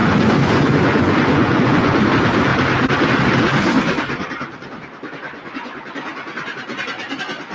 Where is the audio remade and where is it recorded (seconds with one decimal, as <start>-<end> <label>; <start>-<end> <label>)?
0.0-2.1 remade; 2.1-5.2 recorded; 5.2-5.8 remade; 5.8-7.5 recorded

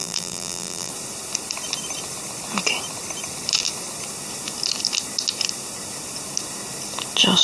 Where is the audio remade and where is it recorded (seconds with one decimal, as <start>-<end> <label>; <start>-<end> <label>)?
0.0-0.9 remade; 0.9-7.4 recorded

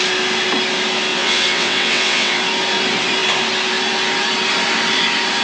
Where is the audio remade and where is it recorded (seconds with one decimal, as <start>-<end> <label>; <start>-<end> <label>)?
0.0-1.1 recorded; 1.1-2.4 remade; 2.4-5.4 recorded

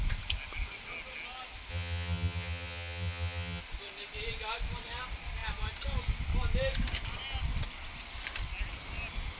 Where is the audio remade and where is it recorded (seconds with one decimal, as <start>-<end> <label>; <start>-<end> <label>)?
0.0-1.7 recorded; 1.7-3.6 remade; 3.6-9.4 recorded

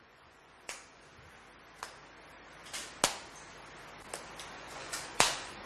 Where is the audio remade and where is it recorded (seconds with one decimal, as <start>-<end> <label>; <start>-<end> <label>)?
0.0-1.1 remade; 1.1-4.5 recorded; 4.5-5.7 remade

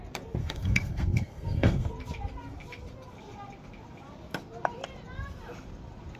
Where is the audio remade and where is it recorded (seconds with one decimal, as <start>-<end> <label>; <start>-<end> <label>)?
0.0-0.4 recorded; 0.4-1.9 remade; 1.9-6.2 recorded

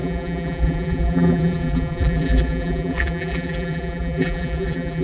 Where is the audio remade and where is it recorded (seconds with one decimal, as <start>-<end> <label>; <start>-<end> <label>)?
0.0-5.0 remade

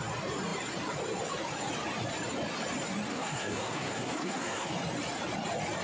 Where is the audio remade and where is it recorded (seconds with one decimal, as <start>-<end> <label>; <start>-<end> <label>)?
0.0-3.1 recorded; 3.1-4.7 remade; 4.7-5.8 recorded